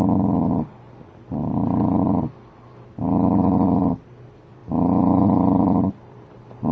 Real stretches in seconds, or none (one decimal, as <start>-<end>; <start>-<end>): 0.0-4.6